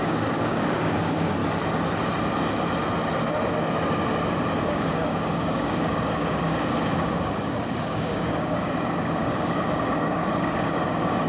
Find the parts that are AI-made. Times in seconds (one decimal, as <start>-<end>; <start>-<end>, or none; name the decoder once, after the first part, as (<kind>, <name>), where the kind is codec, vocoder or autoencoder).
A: 0.0-1.4 (codec, DAC); 4.6-11.3